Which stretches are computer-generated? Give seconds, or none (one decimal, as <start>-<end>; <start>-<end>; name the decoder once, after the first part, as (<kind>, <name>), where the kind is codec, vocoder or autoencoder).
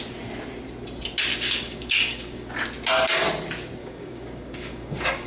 1.3-2.5 (codec, DAC); 3.8-5.3